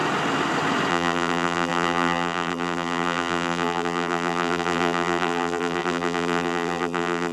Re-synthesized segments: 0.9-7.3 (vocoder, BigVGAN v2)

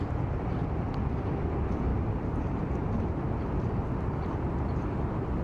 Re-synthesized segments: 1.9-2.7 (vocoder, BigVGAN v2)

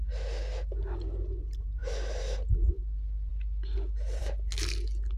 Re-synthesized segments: 1.8-2.5 (vocoder, BigVGAN v2)